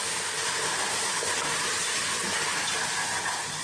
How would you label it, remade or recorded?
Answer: recorded